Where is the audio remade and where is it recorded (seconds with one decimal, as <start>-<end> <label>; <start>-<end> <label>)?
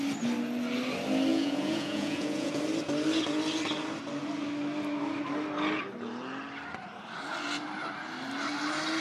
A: 0.0-1.3 recorded; 1.3-2.6 remade; 2.6-9.0 recorded